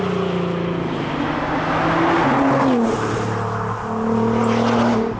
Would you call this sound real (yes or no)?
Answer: yes